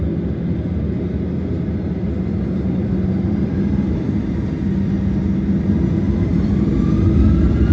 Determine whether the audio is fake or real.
real